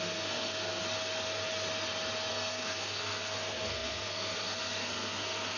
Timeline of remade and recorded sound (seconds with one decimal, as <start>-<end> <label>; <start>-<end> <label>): 0.0-0.8 remade; 0.8-2.3 recorded; 2.3-5.6 remade